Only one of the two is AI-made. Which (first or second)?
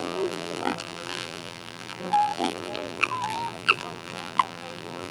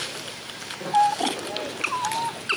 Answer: first